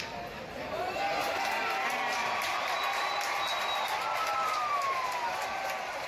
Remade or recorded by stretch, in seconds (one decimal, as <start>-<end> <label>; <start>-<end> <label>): 0.0-6.1 recorded